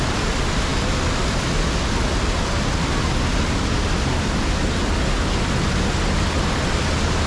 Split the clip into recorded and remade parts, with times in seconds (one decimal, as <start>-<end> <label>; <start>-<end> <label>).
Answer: 0.0-7.3 recorded